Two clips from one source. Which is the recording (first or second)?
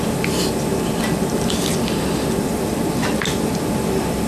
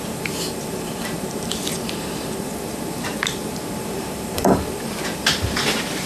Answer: first